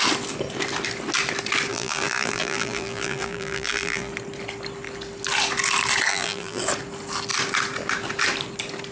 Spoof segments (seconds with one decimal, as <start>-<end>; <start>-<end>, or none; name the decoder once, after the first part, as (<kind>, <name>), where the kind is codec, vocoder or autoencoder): 1.7-4.1 (vocoder, BigVGAN v2); 6.1-6.6

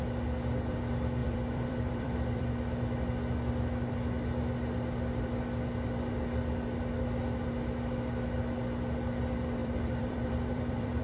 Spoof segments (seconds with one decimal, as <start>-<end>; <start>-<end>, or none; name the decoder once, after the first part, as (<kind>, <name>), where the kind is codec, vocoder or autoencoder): 1.2-2.4 (vocoder, BigVGAN v2); 9.6-11.0

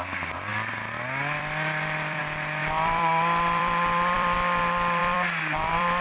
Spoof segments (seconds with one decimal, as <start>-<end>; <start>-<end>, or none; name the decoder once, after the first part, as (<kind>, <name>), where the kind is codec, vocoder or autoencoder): 0.5-2.2 (vocoder, BigVGAN v2); 2.6-4.6; 5.0-6.0

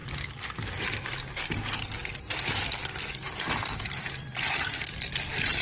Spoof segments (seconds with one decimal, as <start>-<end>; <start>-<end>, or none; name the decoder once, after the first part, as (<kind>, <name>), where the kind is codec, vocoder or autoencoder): 2.0-5.6 (vocoder, BigVGAN v2)